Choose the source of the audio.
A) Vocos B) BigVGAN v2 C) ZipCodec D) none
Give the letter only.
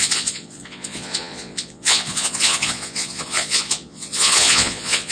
A